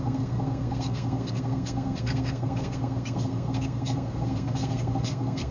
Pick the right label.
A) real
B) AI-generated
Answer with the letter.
B